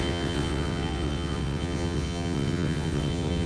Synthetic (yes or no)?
yes